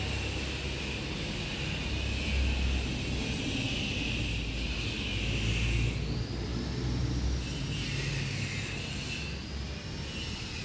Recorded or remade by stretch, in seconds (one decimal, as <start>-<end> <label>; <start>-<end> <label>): 0.0-10.6 recorded